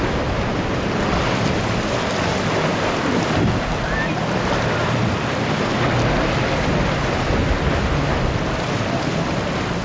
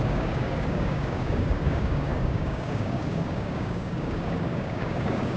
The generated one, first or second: second